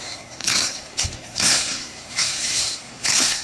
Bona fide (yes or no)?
no